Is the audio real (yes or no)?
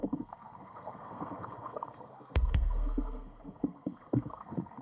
no